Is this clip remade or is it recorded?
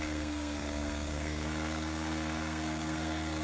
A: remade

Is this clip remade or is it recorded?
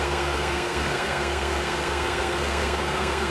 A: remade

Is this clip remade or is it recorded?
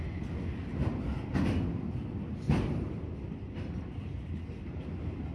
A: recorded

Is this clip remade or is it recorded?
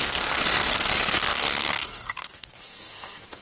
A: remade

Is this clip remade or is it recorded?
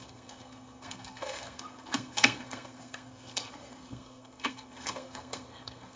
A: remade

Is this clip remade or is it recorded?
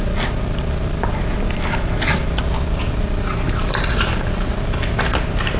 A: recorded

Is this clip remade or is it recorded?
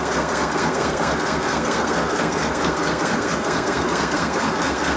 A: remade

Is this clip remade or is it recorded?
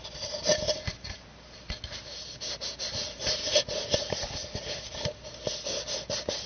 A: recorded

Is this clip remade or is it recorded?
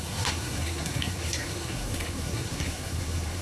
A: remade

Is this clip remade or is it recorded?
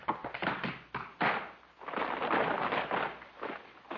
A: recorded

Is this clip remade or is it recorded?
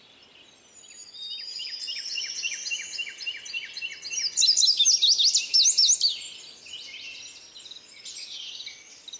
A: recorded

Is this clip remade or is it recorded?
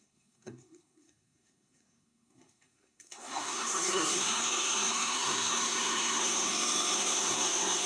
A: remade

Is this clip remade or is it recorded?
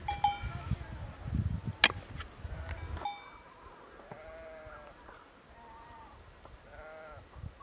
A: recorded